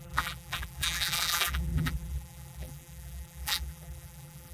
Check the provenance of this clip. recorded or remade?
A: remade